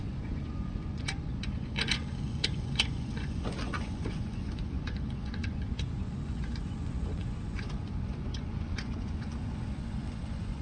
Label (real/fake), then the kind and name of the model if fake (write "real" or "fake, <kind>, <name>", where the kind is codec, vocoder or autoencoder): fake, vocoder, Vocos